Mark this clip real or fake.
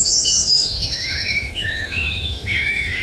fake